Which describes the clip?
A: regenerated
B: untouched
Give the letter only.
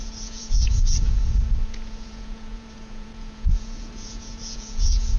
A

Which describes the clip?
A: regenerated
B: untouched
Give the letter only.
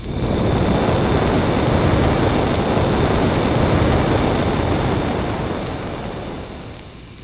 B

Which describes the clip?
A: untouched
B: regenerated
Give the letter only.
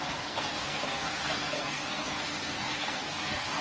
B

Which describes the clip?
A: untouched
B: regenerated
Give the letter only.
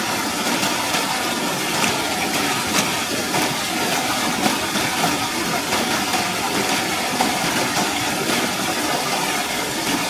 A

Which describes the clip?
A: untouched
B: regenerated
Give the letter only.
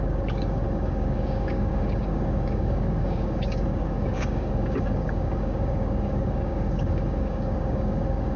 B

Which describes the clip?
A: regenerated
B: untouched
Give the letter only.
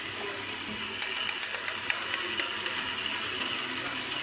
B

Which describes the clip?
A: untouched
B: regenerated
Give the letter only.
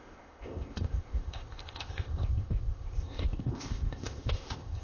B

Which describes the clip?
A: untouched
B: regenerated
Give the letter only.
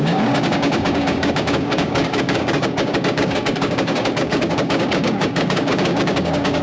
B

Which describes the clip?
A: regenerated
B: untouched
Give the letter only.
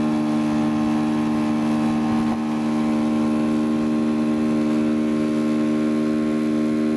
B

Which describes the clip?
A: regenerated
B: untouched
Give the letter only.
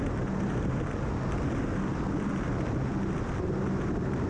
B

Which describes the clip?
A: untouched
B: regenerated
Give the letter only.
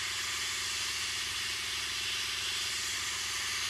A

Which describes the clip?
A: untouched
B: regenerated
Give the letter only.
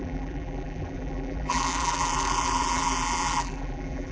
B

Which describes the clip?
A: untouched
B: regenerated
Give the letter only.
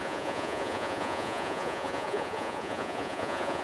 B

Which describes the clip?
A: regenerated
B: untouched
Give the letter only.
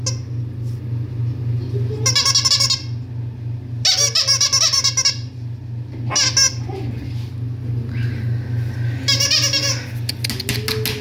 B